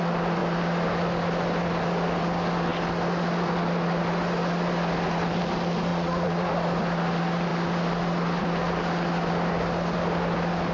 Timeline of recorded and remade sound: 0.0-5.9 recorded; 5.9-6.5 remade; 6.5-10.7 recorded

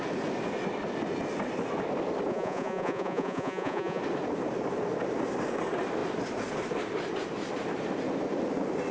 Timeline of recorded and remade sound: 0.0-2.3 recorded; 2.3-4.0 remade; 4.0-8.9 recorded

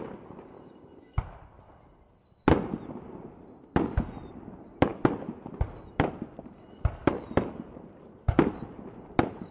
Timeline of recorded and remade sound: 0.0-9.5 recorded

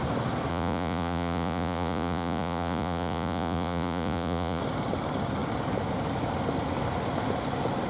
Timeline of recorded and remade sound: 0.0-0.5 recorded; 0.5-4.6 remade; 4.6-7.9 recorded

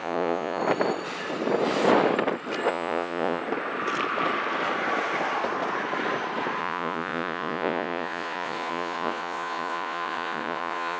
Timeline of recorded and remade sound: 0.0-0.6 remade; 0.6-2.7 recorded; 2.7-3.4 remade; 3.4-6.6 recorded; 6.6-11.0 remade

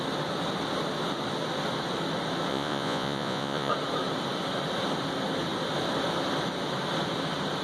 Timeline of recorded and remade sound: 0.0-2.5 recorded; 2.5-3.7 remade; 3.7-7.6 recorded

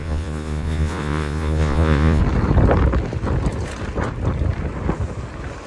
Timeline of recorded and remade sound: 0.0-2.2 remade; 2.2-5.7 recorded